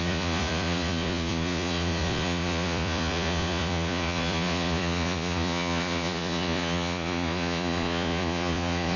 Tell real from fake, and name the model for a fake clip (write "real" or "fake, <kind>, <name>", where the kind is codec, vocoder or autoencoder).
fake, vocoder, Vocos